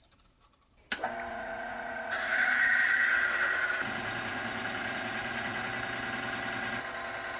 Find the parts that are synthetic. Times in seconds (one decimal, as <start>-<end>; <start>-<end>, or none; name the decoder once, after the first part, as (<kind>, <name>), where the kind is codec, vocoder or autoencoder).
1.3-5.7 (vocoder, Vocos)